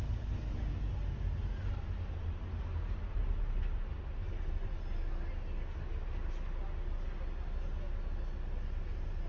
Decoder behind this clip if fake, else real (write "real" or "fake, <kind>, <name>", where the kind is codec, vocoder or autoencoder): real